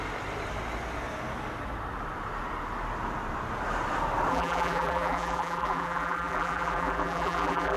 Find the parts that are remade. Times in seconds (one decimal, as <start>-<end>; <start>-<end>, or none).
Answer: 4.3-7.8